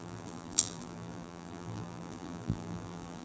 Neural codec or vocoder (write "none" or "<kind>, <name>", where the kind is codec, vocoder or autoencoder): vocoder, BigVGAN v2